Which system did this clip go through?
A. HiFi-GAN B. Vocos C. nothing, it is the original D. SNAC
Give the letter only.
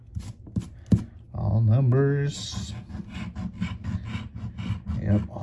C